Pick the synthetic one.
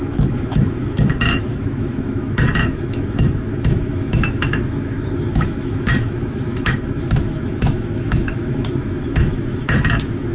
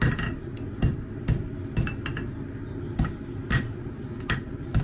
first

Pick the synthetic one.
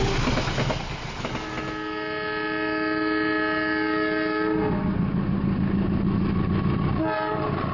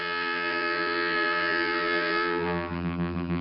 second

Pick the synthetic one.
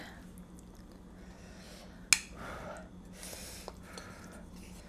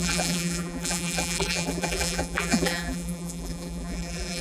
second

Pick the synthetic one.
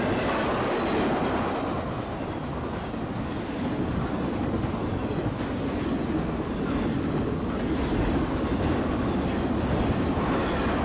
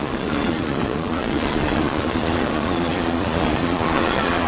second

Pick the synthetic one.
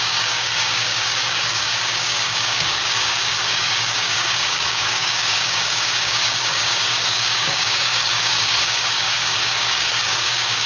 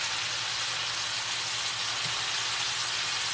first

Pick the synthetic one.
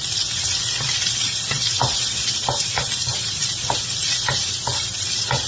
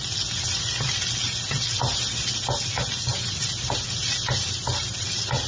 first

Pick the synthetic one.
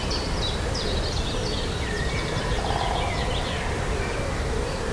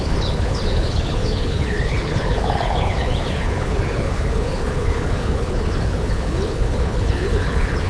second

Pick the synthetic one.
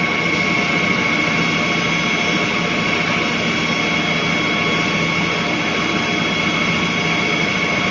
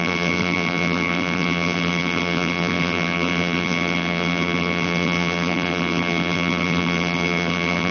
second